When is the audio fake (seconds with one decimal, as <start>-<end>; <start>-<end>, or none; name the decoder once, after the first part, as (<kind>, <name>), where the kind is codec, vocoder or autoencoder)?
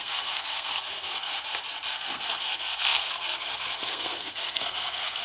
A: 0.0-1.3 (codec, SNAC); 1.9-5.2